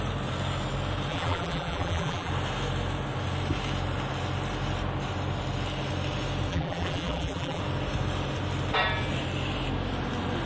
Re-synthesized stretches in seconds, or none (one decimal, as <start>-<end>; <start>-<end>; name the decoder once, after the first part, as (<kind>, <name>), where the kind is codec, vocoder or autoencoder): 1.1-2.3 (vocoder, BigVGAN v2); 6.5-7.6